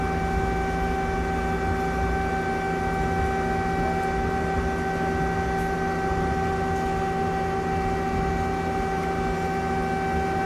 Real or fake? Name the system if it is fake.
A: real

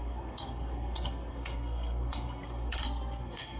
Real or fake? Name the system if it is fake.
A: fake, codec, SNAC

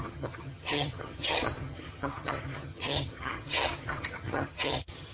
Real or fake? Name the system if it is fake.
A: fake, vocoder, HiFi-GAN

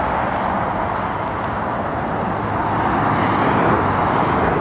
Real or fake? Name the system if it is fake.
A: real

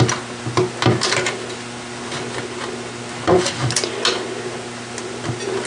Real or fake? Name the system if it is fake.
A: real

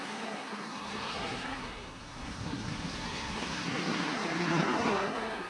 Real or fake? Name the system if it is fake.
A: fake, codec, SNAC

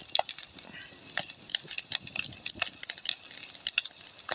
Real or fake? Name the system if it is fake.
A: real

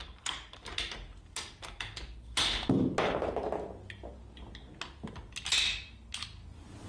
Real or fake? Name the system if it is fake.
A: real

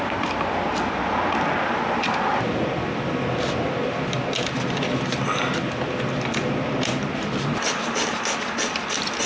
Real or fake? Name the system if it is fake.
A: real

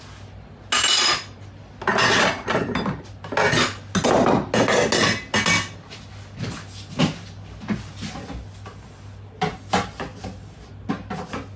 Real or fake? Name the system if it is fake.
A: real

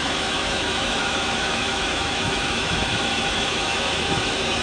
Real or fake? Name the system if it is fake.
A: fake, autoencoder, DAC-VAE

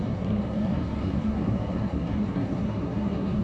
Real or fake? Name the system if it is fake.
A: fake, codec, SNAC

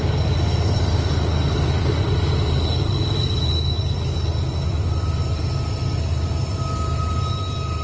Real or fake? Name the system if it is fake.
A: real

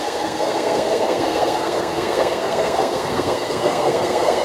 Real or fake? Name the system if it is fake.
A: fake, codec, SNAC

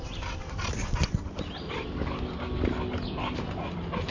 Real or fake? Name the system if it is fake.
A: real